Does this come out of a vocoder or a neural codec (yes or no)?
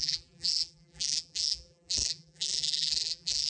yes